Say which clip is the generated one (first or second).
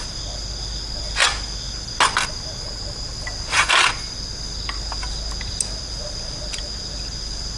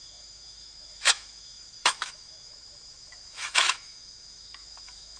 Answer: second